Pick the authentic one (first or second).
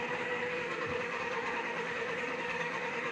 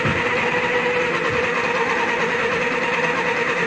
second